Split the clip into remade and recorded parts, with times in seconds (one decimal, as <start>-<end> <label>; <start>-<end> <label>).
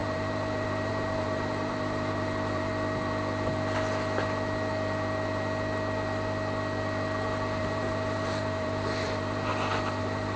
0.0-2.7 remade; 2.7-7.6 recorded; 7.6-9.5 remade; 9.5-10.0 recorded; 10.0-10.4 remade